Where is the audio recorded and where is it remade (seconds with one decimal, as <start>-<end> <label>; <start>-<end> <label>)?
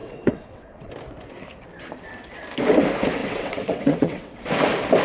0.0-0.9 remade; 0.9-3.2 recorded; 3.2-4.4 remade; 4.4-5.0 recorded